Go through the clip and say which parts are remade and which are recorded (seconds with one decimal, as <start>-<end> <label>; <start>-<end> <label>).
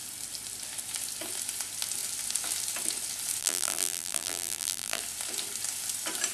0.0-3.4 recorded; 3.4-5.0 remade; 5.0-6.3 recorded